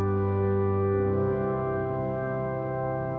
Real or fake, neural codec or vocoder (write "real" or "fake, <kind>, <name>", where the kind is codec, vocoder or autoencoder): real